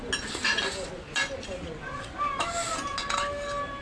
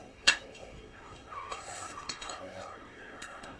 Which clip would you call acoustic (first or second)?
first